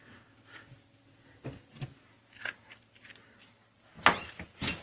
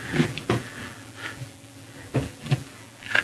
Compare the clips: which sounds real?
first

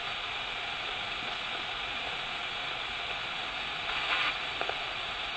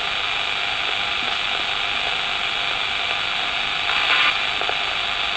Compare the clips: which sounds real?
second